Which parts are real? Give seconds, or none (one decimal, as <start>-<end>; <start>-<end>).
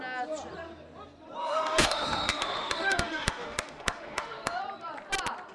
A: 0.0-1.4; 4.6-5.5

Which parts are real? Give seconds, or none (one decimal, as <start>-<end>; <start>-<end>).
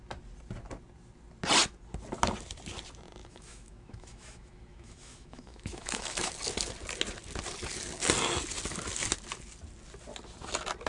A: 0.0-3.2; 6.3-10.9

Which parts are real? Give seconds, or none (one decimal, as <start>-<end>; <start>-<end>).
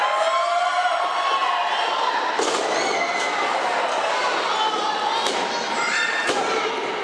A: 0.0-7.0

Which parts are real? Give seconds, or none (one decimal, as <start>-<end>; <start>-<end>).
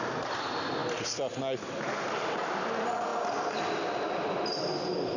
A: 0.0-5.2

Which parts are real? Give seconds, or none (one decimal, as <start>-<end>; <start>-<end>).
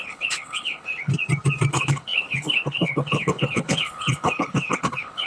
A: 1.1-1.7